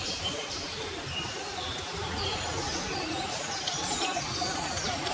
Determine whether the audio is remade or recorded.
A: remade